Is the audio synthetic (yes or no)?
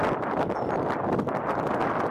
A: no